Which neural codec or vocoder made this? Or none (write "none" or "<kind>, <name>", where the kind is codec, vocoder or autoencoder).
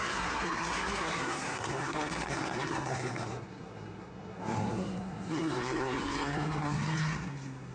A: codec, SNAC